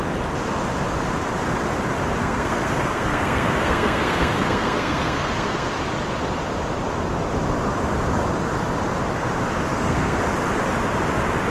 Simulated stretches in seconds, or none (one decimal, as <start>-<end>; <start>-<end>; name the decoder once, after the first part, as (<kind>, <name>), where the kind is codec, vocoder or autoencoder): 2.2-5.7 (codec, SNAC); 9.7-10.2